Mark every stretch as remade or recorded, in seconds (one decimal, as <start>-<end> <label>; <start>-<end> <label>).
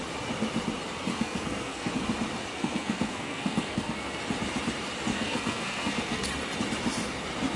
0.0-1.1 recorded; 1.1-1.9 remade; 1.9-2.5 recorded; 2.5-4.2 remade; 4.2-5.1 recorded; 5.1-6.3 remade; 6.3-7.6 recorded